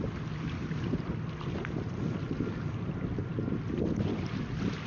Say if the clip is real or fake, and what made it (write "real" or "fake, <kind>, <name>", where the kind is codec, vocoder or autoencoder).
real